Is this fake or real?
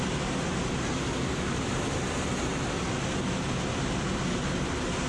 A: real